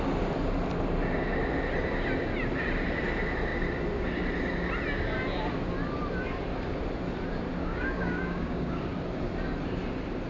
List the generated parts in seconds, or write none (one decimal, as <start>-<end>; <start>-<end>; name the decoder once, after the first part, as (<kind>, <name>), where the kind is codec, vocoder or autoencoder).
7.6-8.8 (codec, DAC)